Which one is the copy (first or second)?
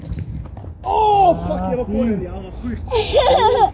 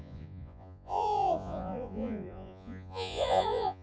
second